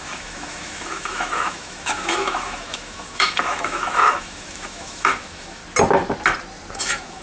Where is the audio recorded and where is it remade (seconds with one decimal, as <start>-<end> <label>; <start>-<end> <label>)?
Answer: 0.0-5.6 remade; 5.6-6.8 recorded; 6.8-7.2 remade